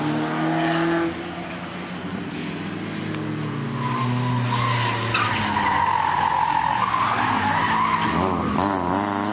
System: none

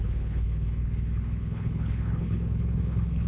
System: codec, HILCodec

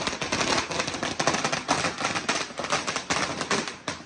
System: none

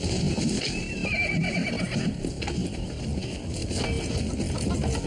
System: none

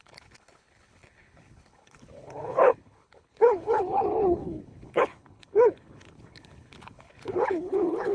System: codec, HILCodec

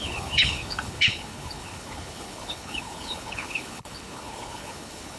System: codec, HILCodec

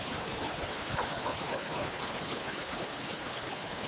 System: codec, HILCodec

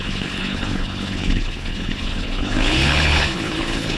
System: codec, HILCodec